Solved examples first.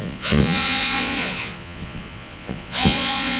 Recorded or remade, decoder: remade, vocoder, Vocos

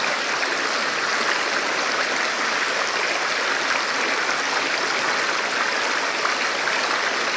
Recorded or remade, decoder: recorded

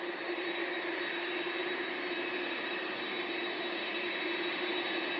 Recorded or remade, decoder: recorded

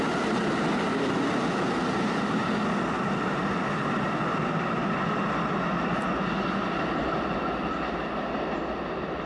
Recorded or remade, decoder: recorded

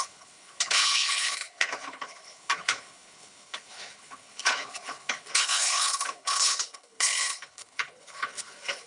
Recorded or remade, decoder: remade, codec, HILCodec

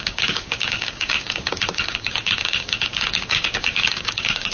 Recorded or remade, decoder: remade, codec, DAC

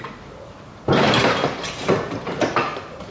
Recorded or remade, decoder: remade, vocoder, BigVGAN v2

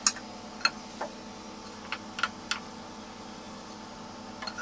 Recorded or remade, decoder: recorded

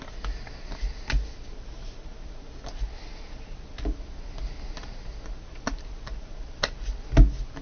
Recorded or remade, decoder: recorded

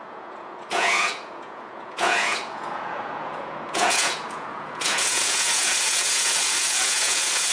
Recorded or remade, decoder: remade, vocoder, Vocos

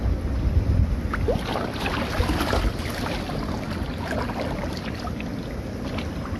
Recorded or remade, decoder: recorded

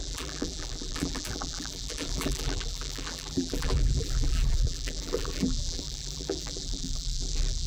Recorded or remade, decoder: remade, vocoder, BigVGAN v2